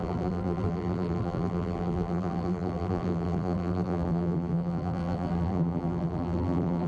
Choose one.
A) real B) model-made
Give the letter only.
B